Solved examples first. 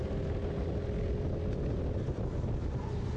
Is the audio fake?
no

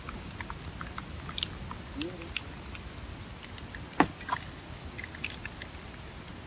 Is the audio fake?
no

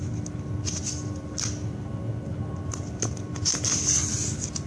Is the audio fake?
no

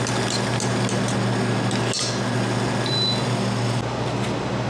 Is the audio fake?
no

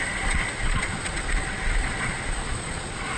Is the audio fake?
yes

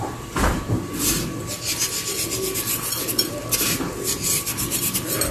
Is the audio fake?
no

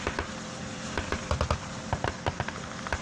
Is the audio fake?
yes